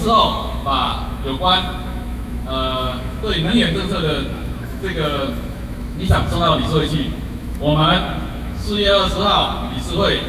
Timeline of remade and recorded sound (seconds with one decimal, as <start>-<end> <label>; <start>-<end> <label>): 0.0-10.3 remade